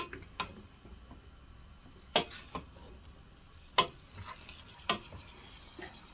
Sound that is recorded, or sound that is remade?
recorded